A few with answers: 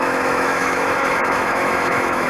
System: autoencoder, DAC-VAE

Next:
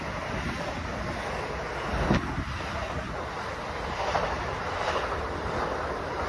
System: none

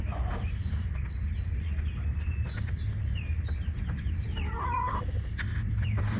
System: vocoder, BigVGAN v2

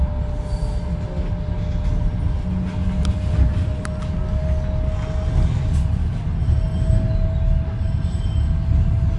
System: none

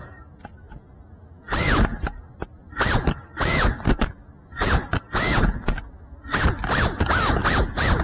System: none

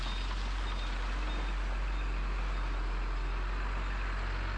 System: none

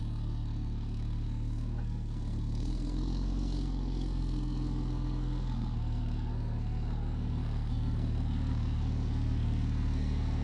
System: codec, SNAC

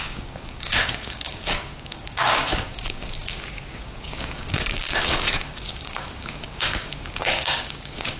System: codec, DAC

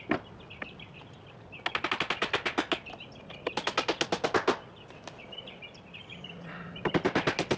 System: none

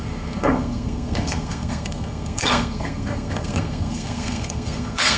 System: codec, SNAC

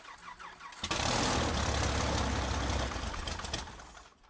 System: none